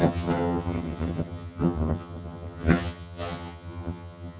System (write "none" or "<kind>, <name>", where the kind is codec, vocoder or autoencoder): vocoder, HiFi-GAN